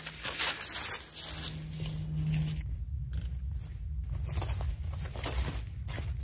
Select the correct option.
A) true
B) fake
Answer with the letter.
A